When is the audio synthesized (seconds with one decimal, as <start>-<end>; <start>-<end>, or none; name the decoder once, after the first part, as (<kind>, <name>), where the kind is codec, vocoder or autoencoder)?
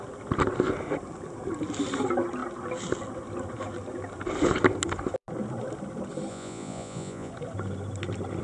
6.3-7.3 (vocoder, Vocos)